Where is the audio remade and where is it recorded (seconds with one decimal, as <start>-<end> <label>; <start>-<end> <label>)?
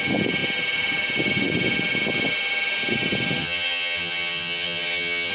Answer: 0.0-3.4 recorded; 3.4-5.3 remade